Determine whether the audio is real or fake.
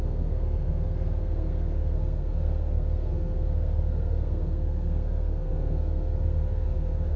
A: fake